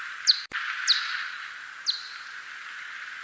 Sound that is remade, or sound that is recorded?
recorded